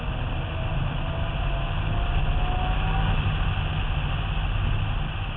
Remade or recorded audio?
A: recorded